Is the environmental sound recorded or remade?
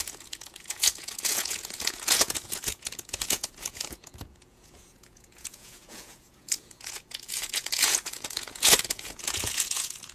remade